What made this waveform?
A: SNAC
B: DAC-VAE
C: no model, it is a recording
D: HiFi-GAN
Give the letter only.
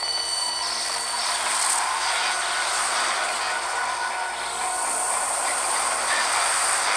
C